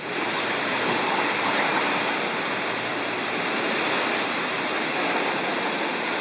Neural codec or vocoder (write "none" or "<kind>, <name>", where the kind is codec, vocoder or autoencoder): none